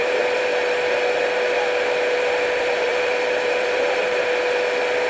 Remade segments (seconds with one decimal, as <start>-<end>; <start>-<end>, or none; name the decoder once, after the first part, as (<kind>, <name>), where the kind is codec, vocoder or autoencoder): 0.0-0.5 (vocoder, BigVGAN v2); 2.6-4.1